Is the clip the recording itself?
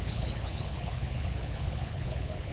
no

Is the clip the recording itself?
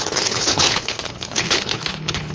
no